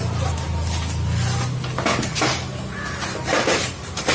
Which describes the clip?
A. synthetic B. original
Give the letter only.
B